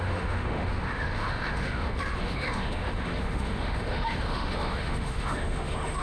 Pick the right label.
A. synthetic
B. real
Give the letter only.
A